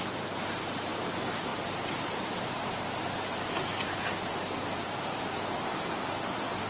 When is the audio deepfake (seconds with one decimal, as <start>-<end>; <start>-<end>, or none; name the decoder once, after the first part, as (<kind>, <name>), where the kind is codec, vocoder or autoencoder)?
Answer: none